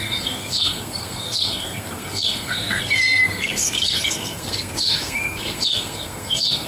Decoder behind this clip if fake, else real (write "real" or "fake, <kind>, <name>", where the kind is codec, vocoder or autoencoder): fake, codec, SNAC